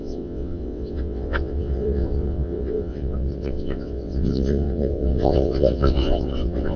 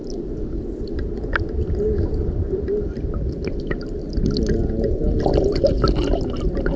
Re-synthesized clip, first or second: first